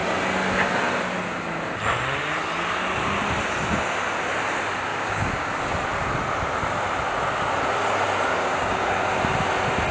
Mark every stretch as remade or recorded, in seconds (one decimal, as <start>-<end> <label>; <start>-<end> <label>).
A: 0.0-4.9 recorded; 4.9-5.5 remade; 5.5-8.3 recorded; 8.3-8.9 remade; 8.9-9.9 recorded

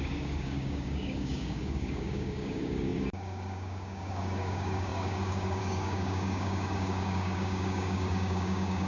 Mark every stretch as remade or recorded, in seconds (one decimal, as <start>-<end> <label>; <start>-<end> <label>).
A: 0.0-8.9 remade

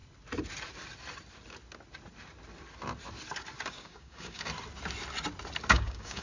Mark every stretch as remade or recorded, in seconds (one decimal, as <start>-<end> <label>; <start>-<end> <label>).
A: 0.0-3.7 recorded; 3.7-4.5 remade; 4.5-5.7 recorded; 5.7-6.2 remade

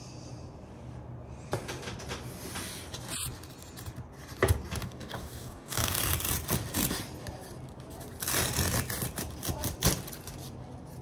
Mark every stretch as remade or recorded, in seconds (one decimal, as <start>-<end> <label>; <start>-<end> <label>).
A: 0.0-4.8 recorded; 4.8-6.0 remade; 6.0-11.0 recorded

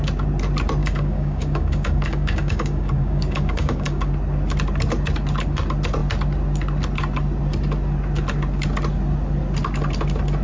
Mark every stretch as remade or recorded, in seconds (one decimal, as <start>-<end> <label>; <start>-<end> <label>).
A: 0.0-0.8 recorded; 0.8-4.1 remade; 4.1-10.4 recorded

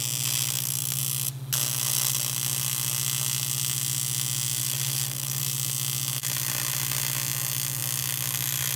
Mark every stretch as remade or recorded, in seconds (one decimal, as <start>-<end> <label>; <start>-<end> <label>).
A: 0.0-4.6 recorded; 4.6-5.4 remade; 5.4-8.8 recorded